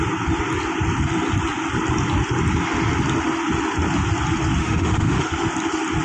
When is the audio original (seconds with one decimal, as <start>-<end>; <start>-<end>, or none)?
0.0-4.6; 5.5-6.0